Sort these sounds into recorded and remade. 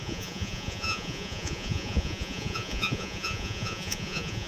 remade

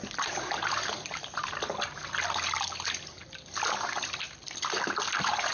recorded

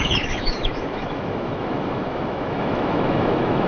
remade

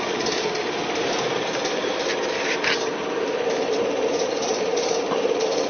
remade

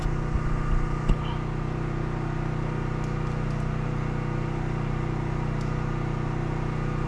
recorded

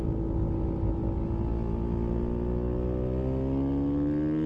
recorded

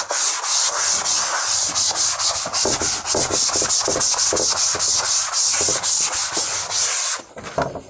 recorded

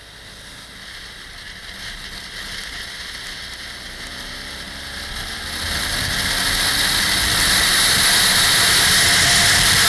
recorded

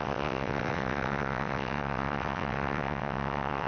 remade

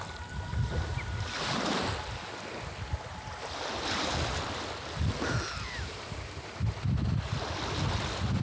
recorded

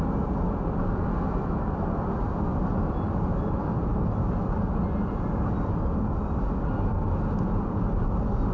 recorded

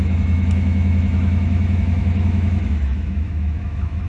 remade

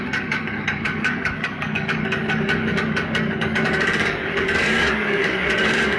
remade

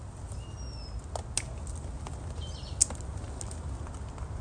recorded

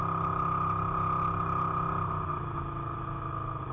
recorded